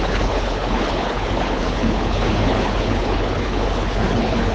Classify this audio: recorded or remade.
remade